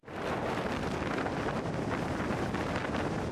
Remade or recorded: recorded